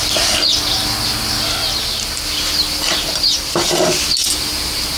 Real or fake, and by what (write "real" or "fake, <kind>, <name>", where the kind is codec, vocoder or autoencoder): real